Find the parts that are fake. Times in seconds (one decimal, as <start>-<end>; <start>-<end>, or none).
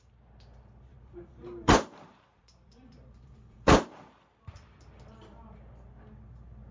0.9-4.0